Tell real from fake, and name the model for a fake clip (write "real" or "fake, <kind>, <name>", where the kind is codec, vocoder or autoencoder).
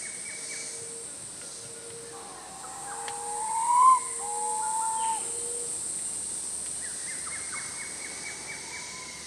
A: real